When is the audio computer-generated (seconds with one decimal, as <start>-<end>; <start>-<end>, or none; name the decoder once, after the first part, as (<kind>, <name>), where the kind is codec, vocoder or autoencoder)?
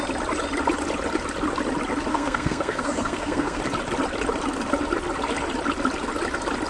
2.1-3.6 (codec, SNAC)